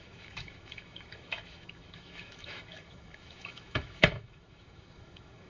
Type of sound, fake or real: fake